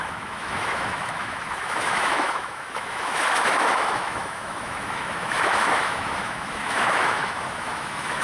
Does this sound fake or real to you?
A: fake